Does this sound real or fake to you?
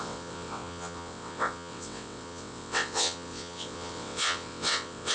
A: fake